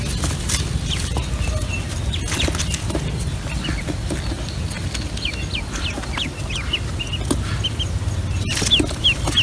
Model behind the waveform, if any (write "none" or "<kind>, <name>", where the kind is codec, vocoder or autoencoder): none